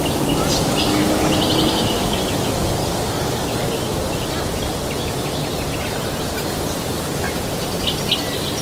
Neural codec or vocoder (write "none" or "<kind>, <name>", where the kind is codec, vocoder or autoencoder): none